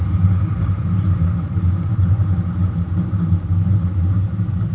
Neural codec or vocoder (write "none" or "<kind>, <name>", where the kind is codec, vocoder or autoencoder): vocoder, BigVGAN v2